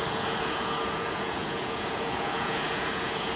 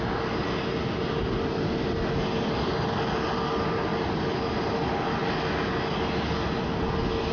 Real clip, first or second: second